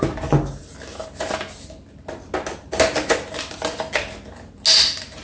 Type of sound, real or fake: real